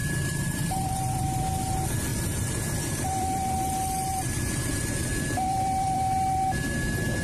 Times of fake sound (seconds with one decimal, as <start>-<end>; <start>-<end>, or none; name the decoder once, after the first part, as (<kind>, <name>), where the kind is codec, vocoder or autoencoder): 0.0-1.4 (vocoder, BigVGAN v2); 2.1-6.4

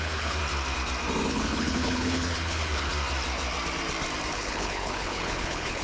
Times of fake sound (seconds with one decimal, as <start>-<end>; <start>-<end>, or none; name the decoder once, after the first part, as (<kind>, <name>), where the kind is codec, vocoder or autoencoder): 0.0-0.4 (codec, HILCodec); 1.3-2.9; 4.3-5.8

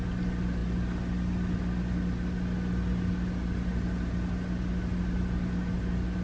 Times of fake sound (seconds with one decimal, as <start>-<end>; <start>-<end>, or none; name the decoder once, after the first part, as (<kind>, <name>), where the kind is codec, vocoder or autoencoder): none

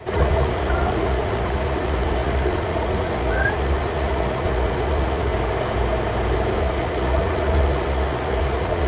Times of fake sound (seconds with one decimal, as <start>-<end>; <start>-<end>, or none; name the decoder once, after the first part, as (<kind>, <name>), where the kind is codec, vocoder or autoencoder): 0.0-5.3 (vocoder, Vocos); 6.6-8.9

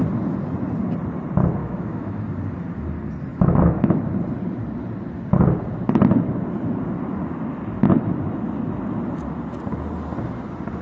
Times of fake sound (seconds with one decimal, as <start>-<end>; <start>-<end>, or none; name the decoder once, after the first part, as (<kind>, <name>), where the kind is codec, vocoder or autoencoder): 1.6-2.2 (autoencoder, DAC-VAE); 3.3-4.0

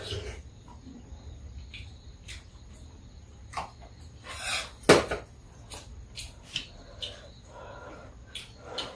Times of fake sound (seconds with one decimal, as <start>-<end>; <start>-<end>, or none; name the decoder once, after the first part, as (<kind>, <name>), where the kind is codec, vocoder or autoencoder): none

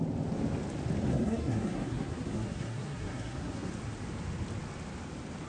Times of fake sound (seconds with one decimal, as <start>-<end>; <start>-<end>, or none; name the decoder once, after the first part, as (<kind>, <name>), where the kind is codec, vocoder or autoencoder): 1.1-3.7 (codec, SNAC)